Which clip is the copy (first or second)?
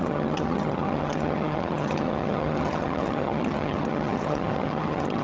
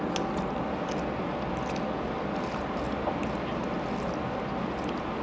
first